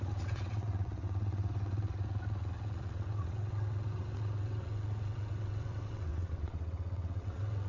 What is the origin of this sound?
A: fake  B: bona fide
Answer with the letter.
A